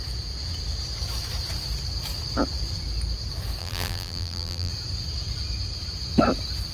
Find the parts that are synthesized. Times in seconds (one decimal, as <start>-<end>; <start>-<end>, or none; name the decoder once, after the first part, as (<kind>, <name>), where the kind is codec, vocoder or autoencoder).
3.6-4.7 (vocoder, BigVGAN v2)